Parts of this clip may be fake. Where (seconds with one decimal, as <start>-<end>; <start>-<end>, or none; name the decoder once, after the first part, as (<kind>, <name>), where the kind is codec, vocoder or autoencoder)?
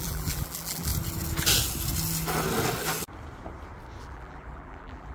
0.0-0.9 (vocoder, BigVGAN v2); 4.0-5.1